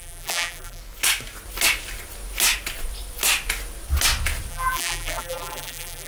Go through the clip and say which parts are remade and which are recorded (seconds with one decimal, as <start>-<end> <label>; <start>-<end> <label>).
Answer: 0.0-0.8 remade; 0.8-4.5 recorded; 4.5-6.1 remade